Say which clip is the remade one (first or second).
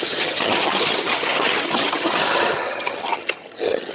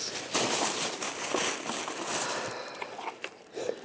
first